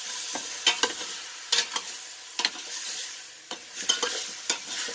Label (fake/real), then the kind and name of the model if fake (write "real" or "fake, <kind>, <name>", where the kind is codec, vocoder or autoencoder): real